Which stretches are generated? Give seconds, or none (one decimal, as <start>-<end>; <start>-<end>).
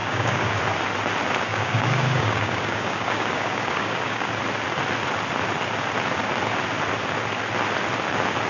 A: 0.0-0.6; 1.5-4.3